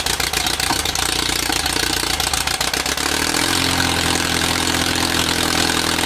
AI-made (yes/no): no